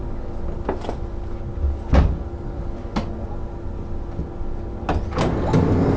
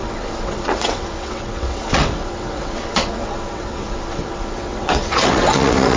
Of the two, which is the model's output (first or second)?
second